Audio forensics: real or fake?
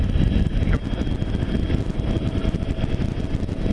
real